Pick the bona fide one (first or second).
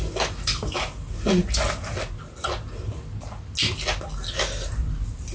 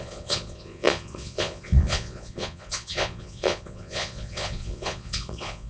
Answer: first